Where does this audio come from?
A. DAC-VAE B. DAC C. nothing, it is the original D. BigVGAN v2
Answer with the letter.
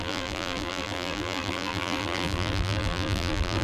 D